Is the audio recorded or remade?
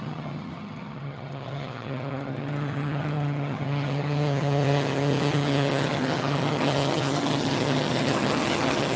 remade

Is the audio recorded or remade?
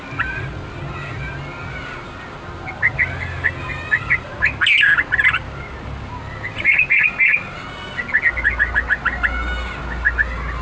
recorded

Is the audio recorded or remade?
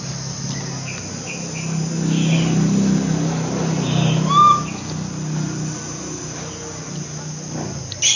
recorded